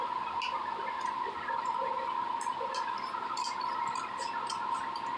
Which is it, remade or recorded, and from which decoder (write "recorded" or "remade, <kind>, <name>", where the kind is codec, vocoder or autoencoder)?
recorded